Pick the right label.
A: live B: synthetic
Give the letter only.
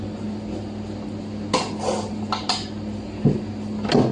A